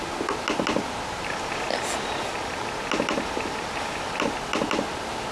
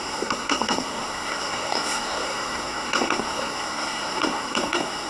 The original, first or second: first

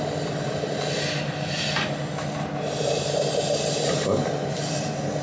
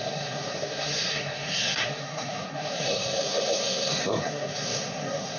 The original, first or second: first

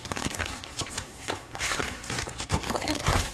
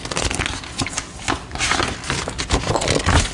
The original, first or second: second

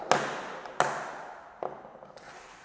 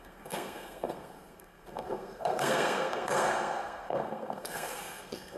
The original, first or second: first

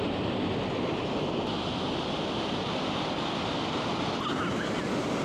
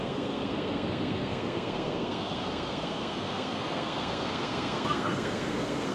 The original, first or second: first